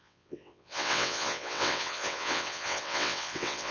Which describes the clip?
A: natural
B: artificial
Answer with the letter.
B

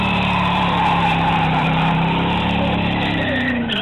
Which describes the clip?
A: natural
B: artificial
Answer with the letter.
B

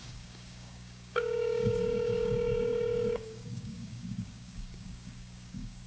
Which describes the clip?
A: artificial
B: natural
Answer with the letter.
A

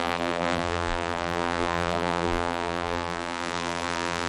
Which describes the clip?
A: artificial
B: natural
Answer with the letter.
A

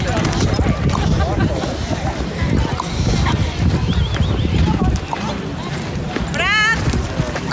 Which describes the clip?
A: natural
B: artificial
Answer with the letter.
A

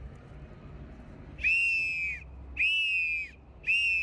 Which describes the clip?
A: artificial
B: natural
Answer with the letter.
B